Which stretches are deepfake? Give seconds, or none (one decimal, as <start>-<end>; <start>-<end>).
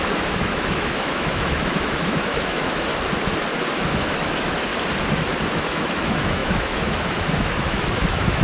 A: 0.0-2.9; 3.7-4.7; 5.5-8.4